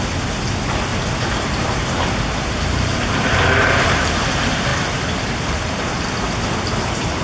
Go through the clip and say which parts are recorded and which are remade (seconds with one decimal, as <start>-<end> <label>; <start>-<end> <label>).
0.0-0.9 recorded; 0.9-4.1 remade; 4.1-4.7 recorded; 4.7-5.9 remade; 5.9-7.2 recorded